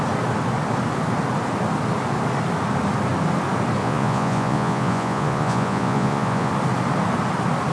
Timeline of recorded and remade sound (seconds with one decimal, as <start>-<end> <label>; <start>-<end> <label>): 0.0-3.8 recorded; 3.8-6.5 remade; 6.5-7.7 recorded

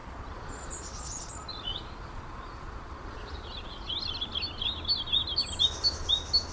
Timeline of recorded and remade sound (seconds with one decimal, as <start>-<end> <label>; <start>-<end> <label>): 0.0-3.9 remade; 3.9-6.5 recorded

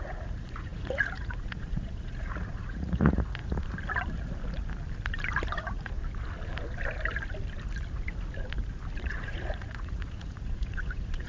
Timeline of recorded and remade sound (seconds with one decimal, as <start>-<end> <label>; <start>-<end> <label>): 0.0-3.4 remade; 3.4-5.5 recorded; 5.5-6.0 remade; 6.0-9.1 recorded; 9.1-11.3 remade